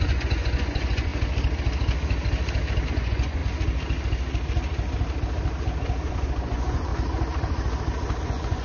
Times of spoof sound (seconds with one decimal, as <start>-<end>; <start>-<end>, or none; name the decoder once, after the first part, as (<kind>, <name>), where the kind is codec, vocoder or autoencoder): 0.0-1.1 (vocoder, Vocos); 2.9-3.4; 6.1-6.9; 8.2-8.6